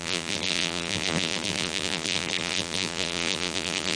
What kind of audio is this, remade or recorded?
remade